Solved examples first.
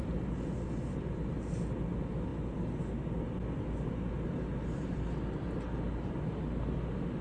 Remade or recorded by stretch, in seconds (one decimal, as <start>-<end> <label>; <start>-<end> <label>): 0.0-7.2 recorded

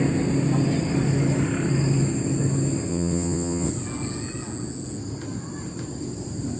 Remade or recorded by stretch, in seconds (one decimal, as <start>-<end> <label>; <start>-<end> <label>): 0.0-2.9 recorded; 2.9-3.7 remade; 3.7-6.6 recorded

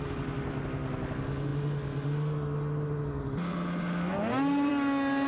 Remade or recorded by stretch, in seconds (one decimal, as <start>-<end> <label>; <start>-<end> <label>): 0.0-5.3 recorded

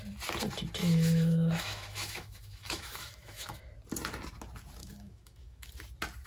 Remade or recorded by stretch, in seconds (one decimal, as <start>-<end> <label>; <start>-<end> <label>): 0.0-0.8 recorded; 0.8-3.6 remade; 3.6-4.8 recorded; 4.8-5.7 remade; 5.7-6.3 recorded

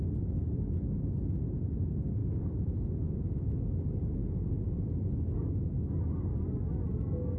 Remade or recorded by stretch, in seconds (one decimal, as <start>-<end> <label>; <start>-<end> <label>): 0.0-2.2 recorded; 2.2-3.5 remade; 3.5-4.2 recorded; 4.2-5.2 remade; 5.2-7.4 recorded